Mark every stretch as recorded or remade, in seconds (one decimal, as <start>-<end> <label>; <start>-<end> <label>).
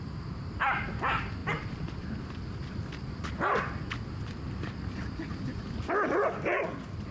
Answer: 0.0-7.1 recorded